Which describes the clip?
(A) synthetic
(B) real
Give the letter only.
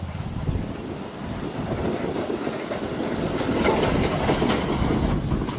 B